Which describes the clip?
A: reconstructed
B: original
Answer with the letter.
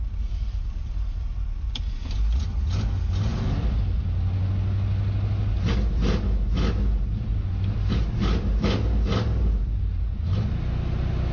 B